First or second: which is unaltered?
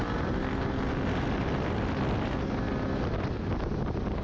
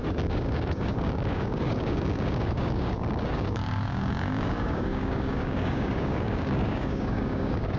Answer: first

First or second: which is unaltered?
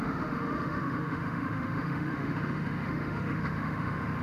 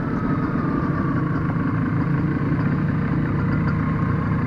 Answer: second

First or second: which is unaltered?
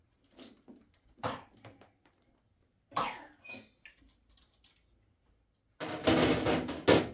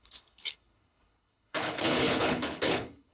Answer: first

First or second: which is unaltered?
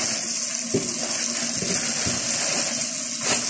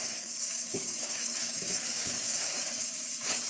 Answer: first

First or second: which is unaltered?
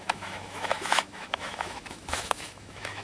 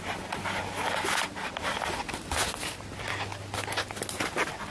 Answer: second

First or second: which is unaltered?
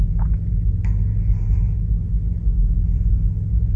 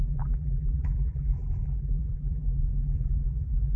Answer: first